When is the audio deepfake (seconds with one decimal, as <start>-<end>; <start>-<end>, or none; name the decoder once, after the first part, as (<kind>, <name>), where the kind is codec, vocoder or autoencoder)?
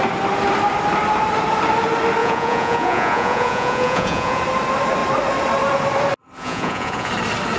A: 2.2-4.4 (vocoder, Vocos); 6.4-7.1